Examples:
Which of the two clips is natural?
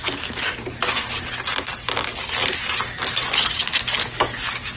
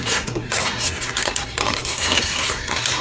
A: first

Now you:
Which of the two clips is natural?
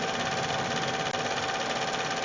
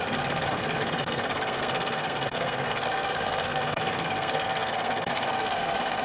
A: first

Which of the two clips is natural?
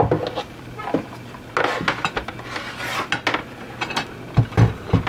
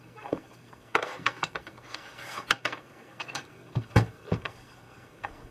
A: first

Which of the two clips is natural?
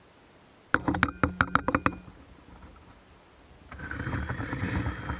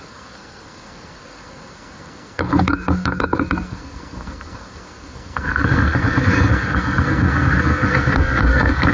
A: first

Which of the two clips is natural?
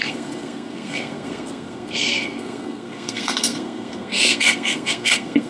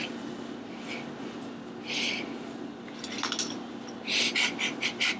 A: second